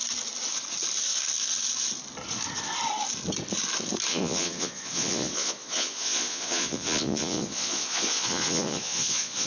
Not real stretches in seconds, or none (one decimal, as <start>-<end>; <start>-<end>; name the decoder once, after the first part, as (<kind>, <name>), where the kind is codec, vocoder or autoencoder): 4.1-9.5 (vocoder, Vocos)